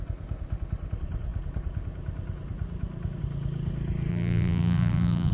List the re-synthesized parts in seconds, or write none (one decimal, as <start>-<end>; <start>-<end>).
4.1-5.3